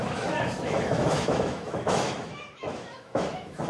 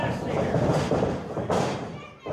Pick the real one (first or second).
second